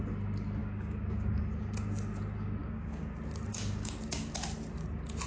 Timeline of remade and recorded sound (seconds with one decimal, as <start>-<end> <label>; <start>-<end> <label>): 0.0-0.6 recorded; 0.6-1.4 remade; 1.4-2.6 recorded; 2.6-3.1 remade; 3.1-3.5 recorded; 3.5-4.3 remade; 4.3-5.3 recorded